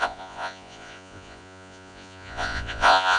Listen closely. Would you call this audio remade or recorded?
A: remade